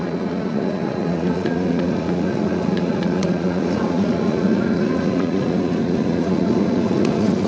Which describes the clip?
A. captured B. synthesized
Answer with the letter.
B